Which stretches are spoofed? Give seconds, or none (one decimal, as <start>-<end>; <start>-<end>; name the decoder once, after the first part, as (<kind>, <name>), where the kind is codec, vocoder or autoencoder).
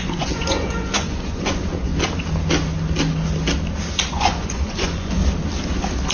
0.0-1.9 (vocoder, Vocos); 4.1-5.2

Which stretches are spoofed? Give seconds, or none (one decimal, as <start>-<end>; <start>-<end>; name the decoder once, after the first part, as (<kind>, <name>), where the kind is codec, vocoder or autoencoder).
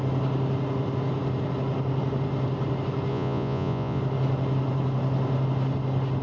3.1-4.0 (vocoder, Vocos)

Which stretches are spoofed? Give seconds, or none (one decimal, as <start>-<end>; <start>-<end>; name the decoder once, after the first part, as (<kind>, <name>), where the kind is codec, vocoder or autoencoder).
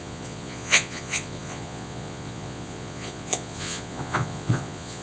0.0-5.0 (vocoder, Vocos)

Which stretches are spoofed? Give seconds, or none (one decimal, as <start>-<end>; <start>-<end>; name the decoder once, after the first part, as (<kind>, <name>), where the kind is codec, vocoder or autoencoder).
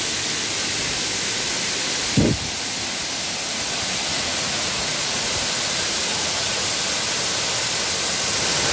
4.1-5.3 (vocoder, Vocos); 6.1-6.7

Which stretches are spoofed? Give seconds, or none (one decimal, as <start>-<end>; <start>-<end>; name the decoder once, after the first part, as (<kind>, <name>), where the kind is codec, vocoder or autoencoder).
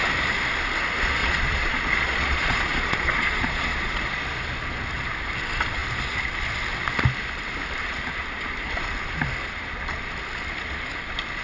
1.2-4.2 (vocoder, Vocos)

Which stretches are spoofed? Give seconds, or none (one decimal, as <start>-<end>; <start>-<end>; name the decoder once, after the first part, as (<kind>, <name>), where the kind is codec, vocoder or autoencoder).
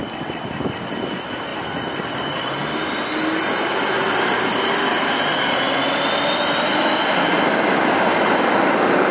none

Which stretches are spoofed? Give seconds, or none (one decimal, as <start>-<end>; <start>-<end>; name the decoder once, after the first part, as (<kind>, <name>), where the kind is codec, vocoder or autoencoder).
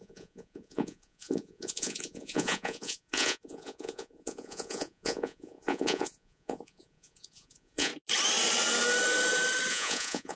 0.0-7.9 (vocoder, Vocos); 9.7-10.4